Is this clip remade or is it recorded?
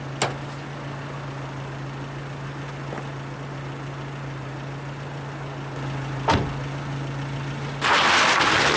recorded